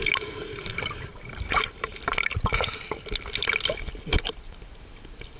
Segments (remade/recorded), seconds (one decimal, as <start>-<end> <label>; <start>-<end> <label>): 0.0-0.7 recorded; 0.7-1.9 remade; 1.9-5.4 recorded